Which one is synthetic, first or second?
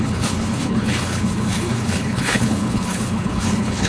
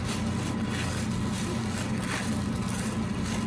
first